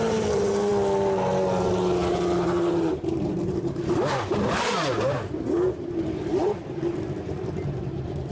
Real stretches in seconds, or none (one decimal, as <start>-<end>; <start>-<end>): 0.7-2.1